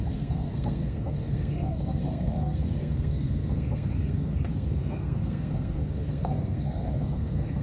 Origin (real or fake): fake